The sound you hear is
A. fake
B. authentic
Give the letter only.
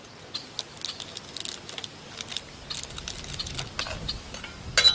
B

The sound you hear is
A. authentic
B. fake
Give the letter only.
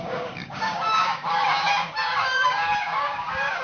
B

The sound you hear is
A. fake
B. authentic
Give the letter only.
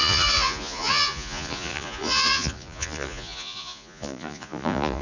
A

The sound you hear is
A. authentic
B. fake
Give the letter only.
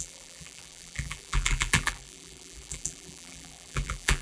B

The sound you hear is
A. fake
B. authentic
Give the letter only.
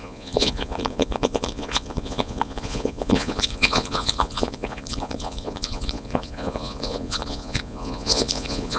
A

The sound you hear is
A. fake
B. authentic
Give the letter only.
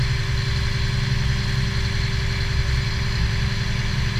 B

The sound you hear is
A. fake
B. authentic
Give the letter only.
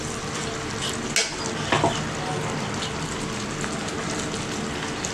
B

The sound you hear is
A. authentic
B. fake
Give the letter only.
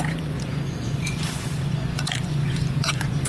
B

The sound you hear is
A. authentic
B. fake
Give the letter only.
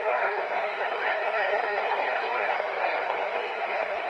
B